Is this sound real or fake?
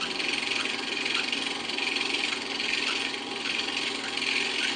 fake